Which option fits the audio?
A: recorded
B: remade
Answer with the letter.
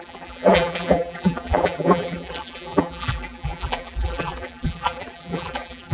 B